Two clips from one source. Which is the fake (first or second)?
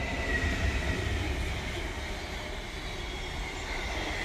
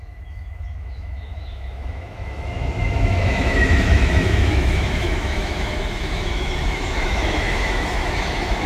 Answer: second